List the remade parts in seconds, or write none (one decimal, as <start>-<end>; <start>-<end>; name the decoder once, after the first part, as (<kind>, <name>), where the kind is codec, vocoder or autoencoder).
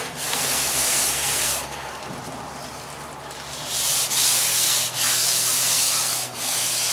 0.0-2.0 (codec, SNAC); 4.1-6.9